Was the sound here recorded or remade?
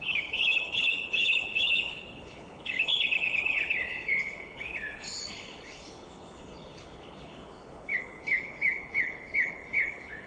remade